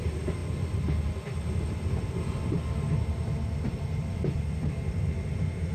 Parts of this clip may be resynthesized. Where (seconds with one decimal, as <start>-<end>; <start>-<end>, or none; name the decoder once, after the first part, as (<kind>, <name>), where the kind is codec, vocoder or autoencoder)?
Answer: none